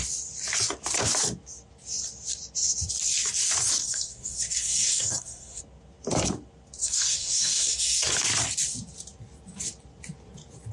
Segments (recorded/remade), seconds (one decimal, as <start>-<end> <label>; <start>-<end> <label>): 0.0-3.8 recorded; 3.8-5.6 remade; 5.6-6.8 recorded; 6.8-8.1 remade; 8.1-10.7 recorded